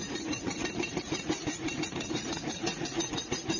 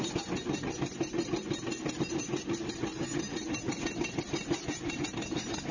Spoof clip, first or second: first